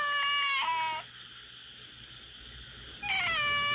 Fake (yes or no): no